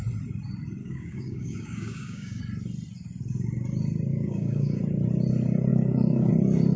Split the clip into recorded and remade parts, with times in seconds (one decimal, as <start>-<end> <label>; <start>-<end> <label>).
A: 0.0-0.8 recorded; 0.8-2.4 remade; 2.4-4.1 recorded; 4.1-4.8 remade; 4.8-5.7 recorded; 5.7-6.3 remade; 6.3-6.8 recorded